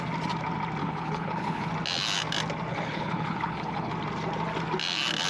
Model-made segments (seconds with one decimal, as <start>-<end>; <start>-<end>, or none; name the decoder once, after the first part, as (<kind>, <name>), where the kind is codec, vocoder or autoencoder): 0.8-1.7 (codec, HILCodec); 2.7-3.9

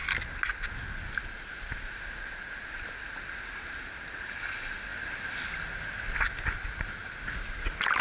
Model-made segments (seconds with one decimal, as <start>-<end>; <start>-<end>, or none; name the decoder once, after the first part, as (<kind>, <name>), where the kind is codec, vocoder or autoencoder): none

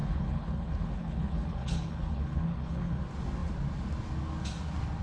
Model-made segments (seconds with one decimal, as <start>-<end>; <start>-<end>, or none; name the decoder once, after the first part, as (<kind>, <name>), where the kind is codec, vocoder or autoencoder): 0.0-3.0 (codec, HILCodec)

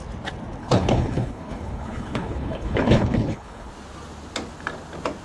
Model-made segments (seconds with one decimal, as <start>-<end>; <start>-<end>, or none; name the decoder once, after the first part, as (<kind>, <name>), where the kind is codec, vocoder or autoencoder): 0.6-3.7 (codec, HILCodec)

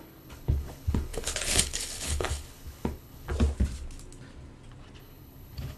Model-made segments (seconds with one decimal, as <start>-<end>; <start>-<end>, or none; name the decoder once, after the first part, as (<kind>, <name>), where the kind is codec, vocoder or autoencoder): 0.0-3.3 (codec, HILCodec); 5.0-5.8

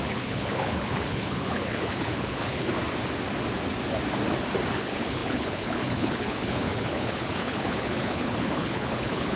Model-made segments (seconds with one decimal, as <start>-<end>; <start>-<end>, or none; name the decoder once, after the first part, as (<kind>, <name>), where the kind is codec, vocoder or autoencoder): 0.0-2.7 (codec, HILCodec); 4.7-9.4